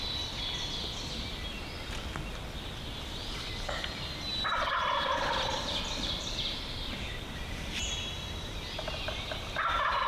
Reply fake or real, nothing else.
real